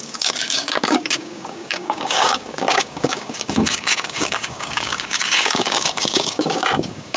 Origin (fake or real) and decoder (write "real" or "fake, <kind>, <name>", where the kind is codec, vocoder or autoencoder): fake, codec, DAC